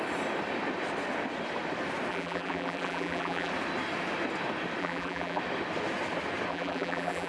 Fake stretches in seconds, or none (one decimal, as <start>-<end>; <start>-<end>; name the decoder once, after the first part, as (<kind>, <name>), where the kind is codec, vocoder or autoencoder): 2.1-3.5 (vocoder, BigVGAN v2); 4.8-5.4; 6.5-7.3